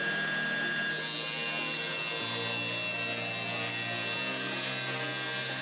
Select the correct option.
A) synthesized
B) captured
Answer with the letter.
B